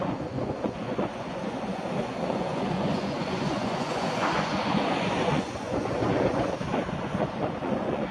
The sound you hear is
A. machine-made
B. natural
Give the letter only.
A